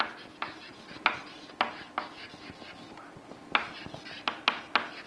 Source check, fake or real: real